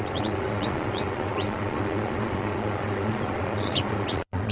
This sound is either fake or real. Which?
fake